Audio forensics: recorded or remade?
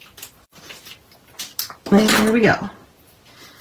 recorded